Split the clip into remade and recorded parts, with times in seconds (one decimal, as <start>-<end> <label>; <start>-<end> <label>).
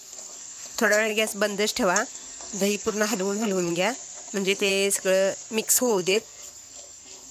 0.0-1.1 remade; 1.1-2.1 recorded; 2.1-3.7 remade; 3.7-4.3 recorded; 4.3-4.7 remade; 4.7-5.7 recorded; 5.7-7.3 remade